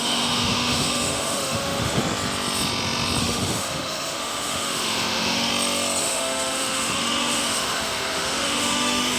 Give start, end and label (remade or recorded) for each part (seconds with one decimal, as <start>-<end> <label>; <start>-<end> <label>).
0.0-2.0 remade; 2.0-3.2 recorded; 3.2-5.5 remade; 5.5-6.0 recorded; 6.0-9.2 remade